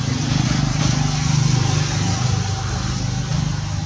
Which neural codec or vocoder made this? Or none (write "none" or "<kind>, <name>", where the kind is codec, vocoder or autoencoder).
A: none